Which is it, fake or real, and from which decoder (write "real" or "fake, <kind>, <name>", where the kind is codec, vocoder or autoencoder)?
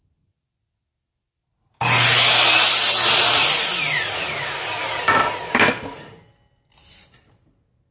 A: real